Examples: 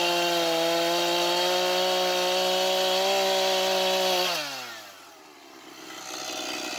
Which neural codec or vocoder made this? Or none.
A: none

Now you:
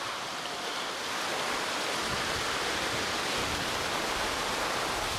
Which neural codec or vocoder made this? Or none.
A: none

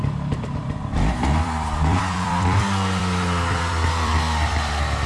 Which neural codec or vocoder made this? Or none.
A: vocoder, BigVGAN v2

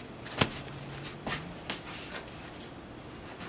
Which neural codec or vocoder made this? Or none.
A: none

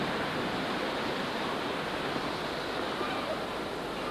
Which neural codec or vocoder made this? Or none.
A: vocoder, BigVGAN v2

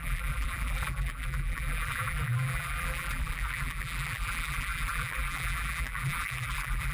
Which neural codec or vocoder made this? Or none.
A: vocoder, BigVGAN v2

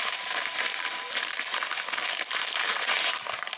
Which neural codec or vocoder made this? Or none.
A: vocoder, BigVGAN v2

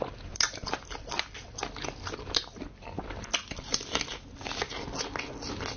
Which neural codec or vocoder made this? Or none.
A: none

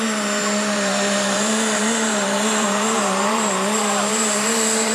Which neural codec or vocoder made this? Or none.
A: vocoder, BigVGAN v2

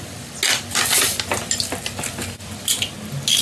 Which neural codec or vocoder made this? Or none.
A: none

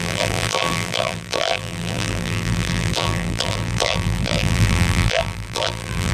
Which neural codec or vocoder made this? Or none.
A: vocoder, BigVGAN v2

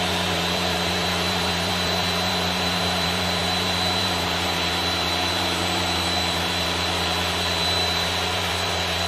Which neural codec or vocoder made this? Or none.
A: vocoder, BigVGAN v2